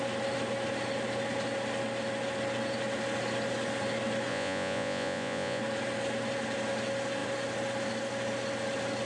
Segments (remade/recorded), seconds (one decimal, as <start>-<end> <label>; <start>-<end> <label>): 0.0-4.3 recorded; 4.3-5.6 remade; 5.6-9.1 recorded